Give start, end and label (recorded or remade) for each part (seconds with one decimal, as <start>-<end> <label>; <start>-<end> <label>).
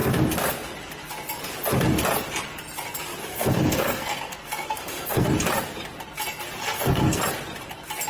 0.0-3.3 recorded; 3.3-5.3 remade; 5.3-6.6 recorded; 6.6-7.2 remade; 7.2-8.1 recorded